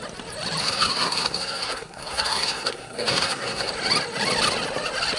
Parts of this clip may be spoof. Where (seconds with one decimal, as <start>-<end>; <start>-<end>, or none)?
0.6-3.7